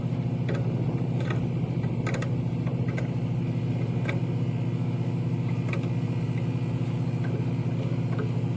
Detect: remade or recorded recorded